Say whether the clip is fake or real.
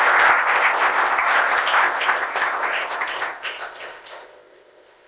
fake